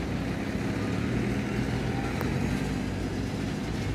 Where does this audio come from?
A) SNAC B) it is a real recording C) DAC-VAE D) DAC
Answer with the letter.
B